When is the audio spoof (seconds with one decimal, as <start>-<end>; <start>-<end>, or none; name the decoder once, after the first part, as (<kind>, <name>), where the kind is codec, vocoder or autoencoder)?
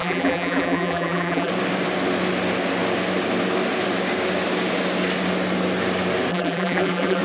0.0-1.5 (vocoder, BigVGAN v2); 6.3-7.2